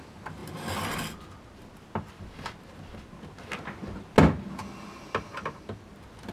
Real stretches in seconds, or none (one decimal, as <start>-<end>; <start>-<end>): 0.0-6.3